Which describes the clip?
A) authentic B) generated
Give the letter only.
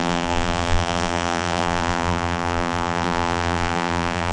B